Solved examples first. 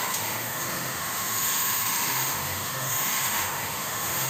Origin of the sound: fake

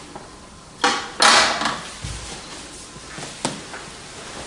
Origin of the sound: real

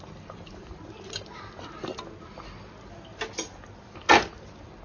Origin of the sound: real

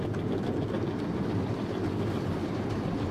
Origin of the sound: real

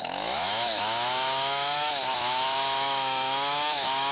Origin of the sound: fake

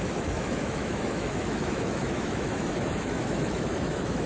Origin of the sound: fake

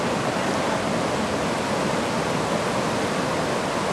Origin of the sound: real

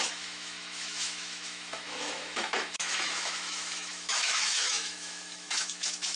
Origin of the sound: fake